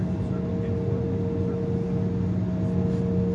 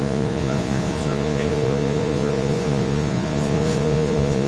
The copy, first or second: second